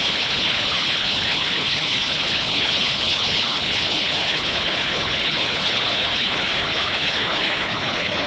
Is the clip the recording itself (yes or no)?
no